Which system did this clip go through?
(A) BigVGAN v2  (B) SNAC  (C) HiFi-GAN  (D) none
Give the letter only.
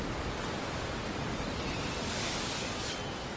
D